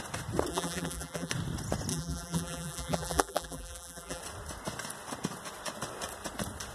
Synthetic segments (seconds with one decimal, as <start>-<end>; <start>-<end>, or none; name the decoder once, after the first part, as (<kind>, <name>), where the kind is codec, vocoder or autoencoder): 0.5-1.3 (vocoder, BigVGAN v2); 1.9-4.2